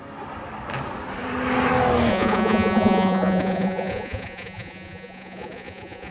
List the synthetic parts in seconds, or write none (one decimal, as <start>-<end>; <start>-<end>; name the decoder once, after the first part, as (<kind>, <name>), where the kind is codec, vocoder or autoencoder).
2.1-6.1 (vocoder, Vocos)